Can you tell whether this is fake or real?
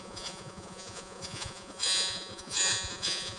fake